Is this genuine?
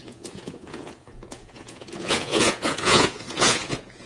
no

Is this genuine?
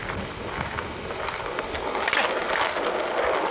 yes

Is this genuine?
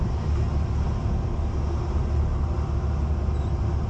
yes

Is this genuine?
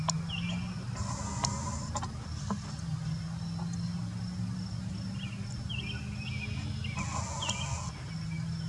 yes